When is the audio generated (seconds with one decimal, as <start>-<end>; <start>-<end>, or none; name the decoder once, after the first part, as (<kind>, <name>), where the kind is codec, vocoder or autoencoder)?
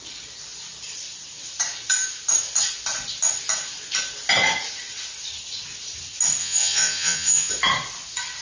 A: 6.4-7.5 (vocoder, Vocos)